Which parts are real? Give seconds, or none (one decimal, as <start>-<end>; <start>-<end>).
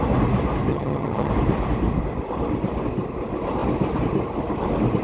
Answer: 0.0-0.7; 1.3-5.0